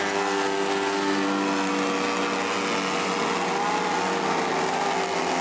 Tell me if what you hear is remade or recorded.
recorded